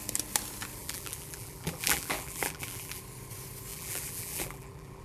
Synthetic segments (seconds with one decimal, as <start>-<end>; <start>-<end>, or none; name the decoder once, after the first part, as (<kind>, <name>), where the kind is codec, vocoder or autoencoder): 0.8-3.0 (vocoder, BigVGAN v2); 3.7-5.0

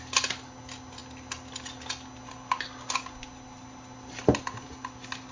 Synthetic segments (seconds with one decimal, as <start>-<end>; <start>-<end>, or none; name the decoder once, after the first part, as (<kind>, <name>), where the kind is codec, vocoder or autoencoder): none

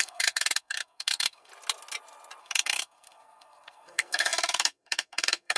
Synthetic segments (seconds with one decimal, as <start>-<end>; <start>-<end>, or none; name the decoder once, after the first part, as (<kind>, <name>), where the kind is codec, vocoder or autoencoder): 0.0-1.5 (codec, SNAC); 2.4-5.6

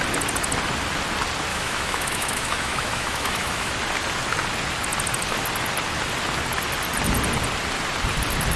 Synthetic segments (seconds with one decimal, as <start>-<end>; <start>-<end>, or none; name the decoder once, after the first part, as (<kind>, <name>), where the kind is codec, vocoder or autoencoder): 1.5-3.7 (autoencoder, DAC-VAE)

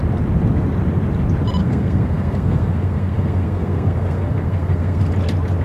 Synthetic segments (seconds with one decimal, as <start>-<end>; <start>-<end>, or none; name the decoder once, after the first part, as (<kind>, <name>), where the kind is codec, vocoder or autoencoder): 1.6-5.0 (codec, SNAC)

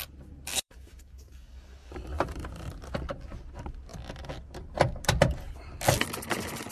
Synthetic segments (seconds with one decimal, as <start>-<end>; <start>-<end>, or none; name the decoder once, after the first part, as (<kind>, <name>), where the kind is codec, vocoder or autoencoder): 0.5-1.9 (codec, DAC)